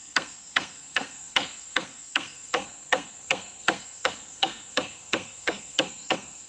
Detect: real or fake fake